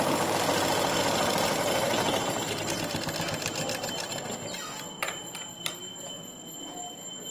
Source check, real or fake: real